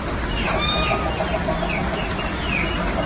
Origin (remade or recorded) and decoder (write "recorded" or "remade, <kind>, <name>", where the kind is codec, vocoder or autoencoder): recorded